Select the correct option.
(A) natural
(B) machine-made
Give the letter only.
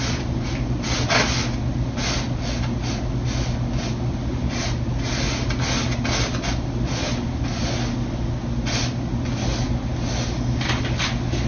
A